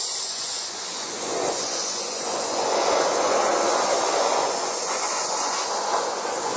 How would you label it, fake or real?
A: fake